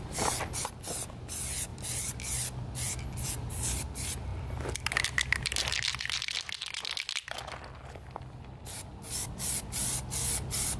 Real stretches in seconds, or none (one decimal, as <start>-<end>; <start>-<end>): 0.0-10.8

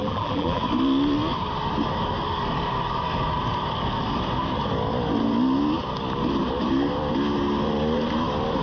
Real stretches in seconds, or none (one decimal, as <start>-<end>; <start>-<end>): 0.6-8.6

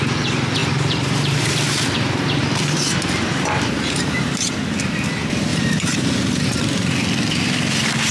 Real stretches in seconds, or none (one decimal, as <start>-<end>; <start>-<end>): 0.0-0.6; 1.4-2.4; 4.5-5.5; 6.6-8.1

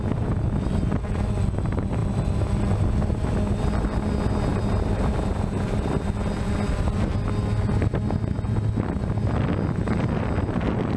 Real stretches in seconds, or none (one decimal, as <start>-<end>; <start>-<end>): 0.0-4.5; 5.9-11.0

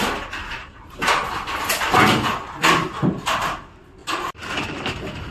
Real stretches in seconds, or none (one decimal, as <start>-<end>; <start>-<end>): 0.0-0.4; 1.7-4.0; 4.5-5.3

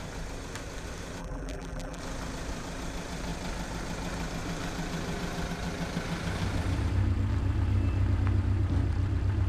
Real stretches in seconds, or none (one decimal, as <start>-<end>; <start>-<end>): 0.0-1.2; 2.0-9.5